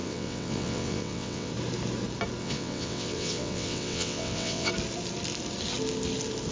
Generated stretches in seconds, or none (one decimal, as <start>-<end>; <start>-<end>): 0.0-1.5; 2.4-4.7